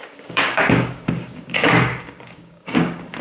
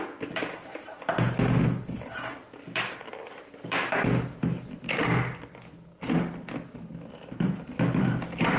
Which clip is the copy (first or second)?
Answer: first